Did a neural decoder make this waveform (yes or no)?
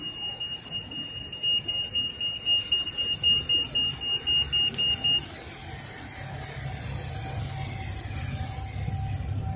no